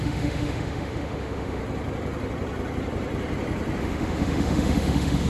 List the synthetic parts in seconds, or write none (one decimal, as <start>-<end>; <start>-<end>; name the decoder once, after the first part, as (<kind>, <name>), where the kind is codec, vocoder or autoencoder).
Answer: 0.0-1.6 (autoencoder, DAC-VAE); 3.8-5.3